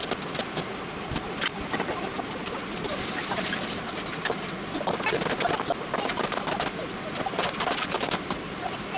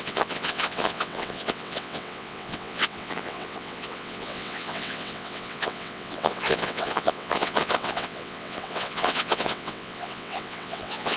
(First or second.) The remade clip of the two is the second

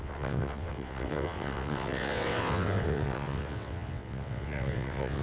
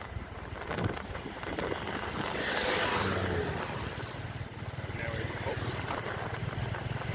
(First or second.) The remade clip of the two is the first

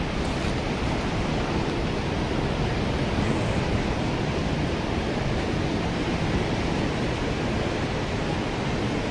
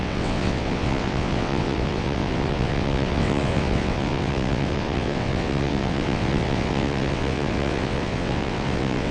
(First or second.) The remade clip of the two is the second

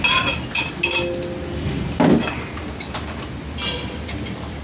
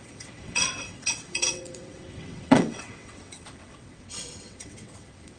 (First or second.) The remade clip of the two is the second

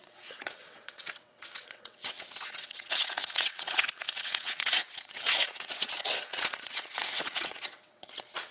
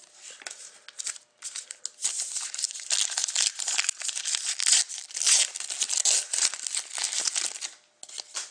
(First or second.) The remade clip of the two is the first